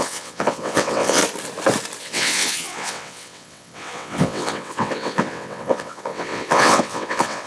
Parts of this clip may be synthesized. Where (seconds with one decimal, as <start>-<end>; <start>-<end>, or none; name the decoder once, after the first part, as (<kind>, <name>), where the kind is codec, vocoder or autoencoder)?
0.0-1.2 (vocoder, WaveNeXt); 2.0-7.5